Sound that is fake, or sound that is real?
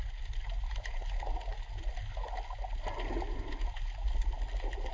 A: real